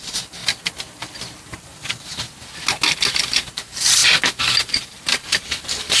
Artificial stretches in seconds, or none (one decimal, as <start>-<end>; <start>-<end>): 0.0-0.4; 1.4-2.1; 3.1-4.0; 4.6-6.0